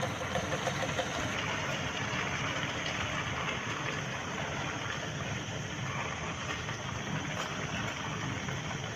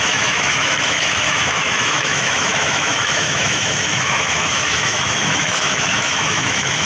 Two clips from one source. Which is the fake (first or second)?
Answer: second